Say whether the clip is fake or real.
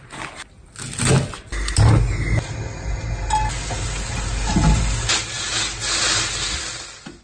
real